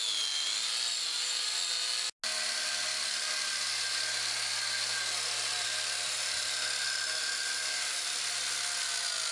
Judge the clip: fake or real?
real